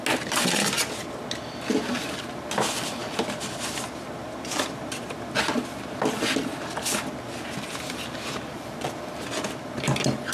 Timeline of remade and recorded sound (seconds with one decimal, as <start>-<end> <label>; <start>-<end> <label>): 0.0-10.3 recorded